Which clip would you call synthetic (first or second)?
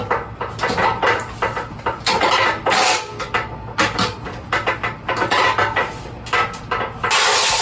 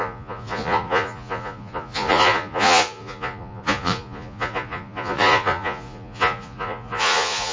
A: second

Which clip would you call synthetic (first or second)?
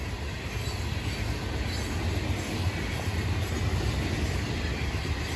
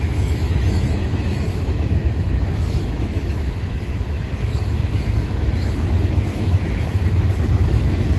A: second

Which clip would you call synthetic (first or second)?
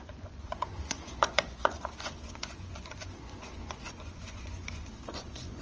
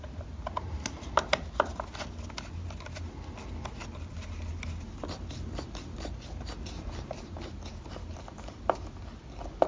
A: first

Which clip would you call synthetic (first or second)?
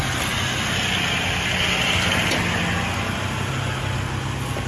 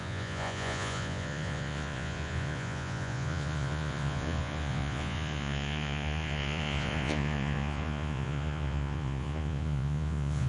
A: second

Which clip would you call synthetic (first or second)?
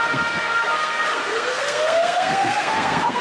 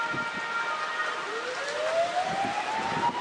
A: first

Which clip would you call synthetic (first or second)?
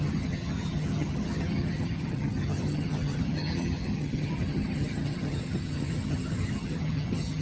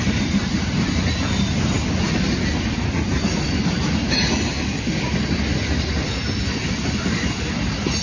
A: first